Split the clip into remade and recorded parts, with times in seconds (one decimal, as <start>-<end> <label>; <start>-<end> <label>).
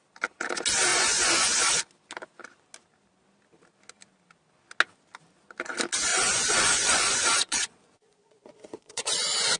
0.0-0.9 recorded; 0.9-1.6 remade; 1.6-6.1 recorded; 6.1-9.6 remade